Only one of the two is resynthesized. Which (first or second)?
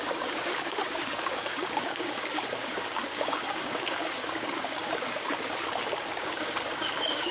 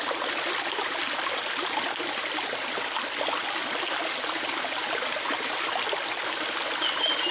first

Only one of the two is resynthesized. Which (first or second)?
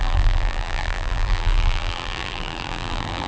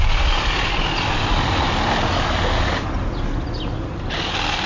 first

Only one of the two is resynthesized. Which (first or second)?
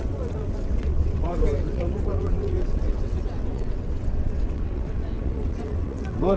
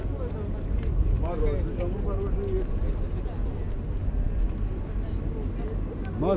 first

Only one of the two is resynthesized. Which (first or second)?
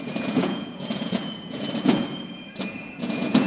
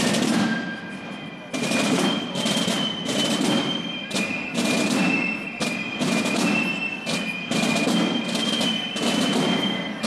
first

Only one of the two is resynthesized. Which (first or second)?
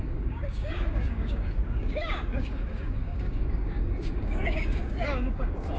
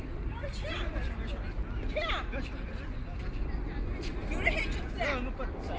first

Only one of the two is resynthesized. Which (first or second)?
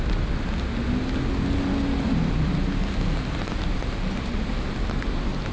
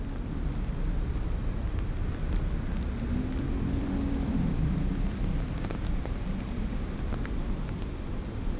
second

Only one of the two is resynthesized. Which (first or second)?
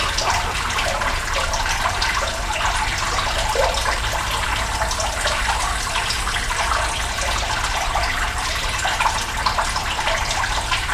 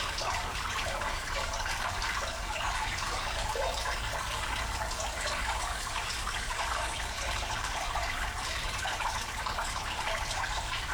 second